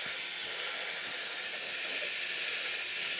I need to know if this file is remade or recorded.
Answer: recorded